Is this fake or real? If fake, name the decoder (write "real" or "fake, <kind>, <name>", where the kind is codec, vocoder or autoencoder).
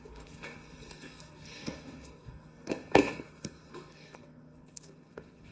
fake, codec, SNAC